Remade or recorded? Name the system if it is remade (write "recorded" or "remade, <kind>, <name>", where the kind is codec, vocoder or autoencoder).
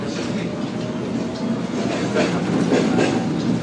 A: recorded